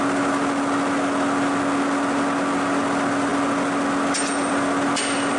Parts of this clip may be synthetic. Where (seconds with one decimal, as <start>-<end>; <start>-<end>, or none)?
none